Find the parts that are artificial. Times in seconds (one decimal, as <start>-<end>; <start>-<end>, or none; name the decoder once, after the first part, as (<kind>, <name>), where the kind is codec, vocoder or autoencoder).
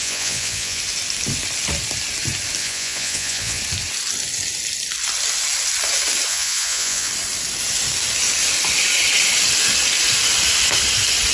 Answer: 0.0-0.8 (vocoder, Vocos); 2.6-3.6; 6.3-7.1